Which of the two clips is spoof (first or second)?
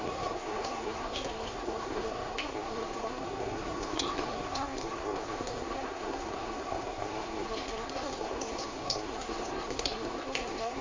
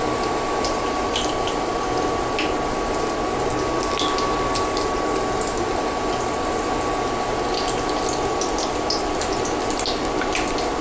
first